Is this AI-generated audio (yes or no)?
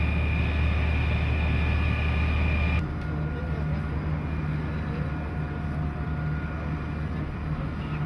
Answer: no